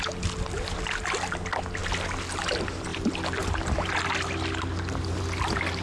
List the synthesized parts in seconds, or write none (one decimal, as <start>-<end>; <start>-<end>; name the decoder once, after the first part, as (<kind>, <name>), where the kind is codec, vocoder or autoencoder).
none